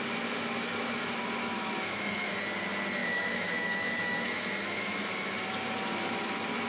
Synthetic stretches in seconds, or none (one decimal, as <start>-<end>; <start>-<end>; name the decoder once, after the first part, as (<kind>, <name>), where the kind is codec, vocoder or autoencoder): 1.4-2.4 (autoencoder, DAC-VAE); 3.0-5.3